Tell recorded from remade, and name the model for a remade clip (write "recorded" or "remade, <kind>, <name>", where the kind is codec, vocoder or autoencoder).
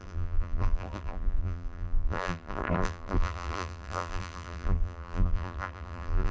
remade, vocoder, BigVGAN v2